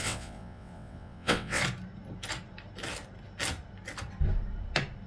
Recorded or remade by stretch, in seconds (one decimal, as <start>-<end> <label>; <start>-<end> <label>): 0.0-1.6 remade; 1.6-5.1 recorded